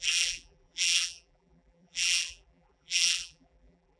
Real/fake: fake